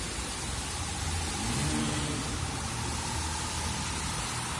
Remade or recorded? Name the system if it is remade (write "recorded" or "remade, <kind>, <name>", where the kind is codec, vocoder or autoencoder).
recorded